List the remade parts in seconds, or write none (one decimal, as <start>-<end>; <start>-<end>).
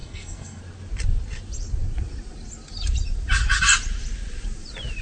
0.0-0.6